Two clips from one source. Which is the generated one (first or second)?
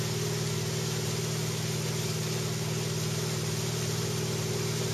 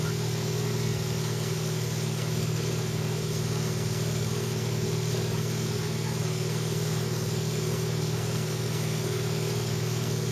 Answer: second